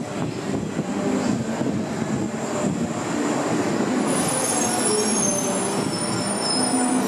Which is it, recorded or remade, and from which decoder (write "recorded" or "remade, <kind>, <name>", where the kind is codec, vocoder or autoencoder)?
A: recorded